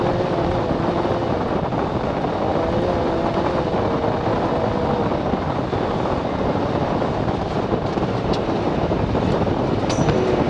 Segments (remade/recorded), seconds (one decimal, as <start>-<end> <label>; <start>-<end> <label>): 0.0-10.5 recorded